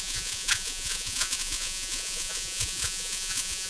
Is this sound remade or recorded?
remade